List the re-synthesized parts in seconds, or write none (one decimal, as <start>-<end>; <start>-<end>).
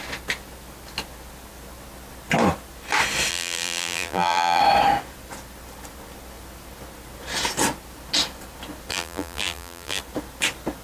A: 3.3-4.6; 8.9-10.0